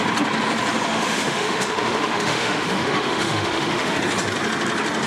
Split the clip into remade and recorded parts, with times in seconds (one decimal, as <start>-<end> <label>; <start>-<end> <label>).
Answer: 0.0-0.9 recorded; 0.9-4.0 remade; 4.0-5.1 recorded